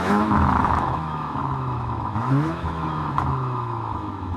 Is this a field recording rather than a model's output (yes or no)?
no